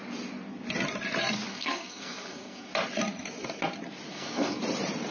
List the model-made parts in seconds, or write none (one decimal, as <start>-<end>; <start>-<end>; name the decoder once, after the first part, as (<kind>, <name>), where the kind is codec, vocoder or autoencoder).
1.5-2.7 (codec, SNAC); 4.1-4.6